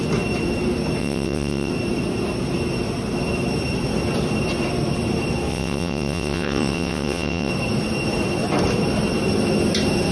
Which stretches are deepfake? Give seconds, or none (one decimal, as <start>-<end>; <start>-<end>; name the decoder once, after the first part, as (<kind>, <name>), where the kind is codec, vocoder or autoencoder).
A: 1.0-1.7 (vocoder, WaveNeXt); 5.5-7.5